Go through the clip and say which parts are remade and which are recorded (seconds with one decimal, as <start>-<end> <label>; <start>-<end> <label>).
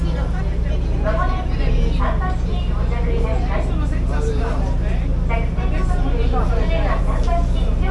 0.0-7.9 recorded